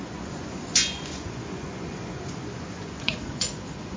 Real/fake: fake